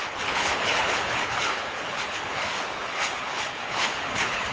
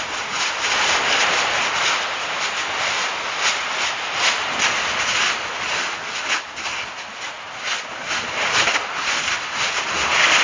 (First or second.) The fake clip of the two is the first